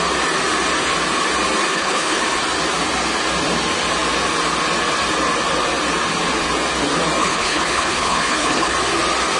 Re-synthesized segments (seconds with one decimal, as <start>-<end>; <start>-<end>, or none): 1.7-2.2; 7.2-8.7